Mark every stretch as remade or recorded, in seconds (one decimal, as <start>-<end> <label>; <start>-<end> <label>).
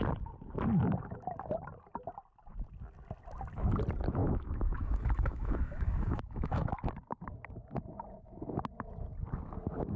0.0-4.2 recorded; 4.2-6.7 remade; 6.7-10.0 recorded